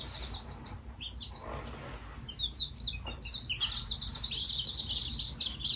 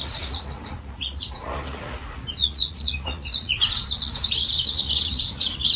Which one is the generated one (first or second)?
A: second